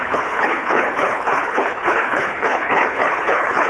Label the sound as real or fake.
fake